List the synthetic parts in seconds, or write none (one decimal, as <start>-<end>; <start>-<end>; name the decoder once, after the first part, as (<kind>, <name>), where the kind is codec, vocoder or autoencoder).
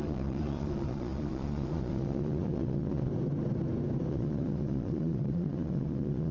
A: 0.0-3.1 (vocoder, Vocos); 4.1-6.3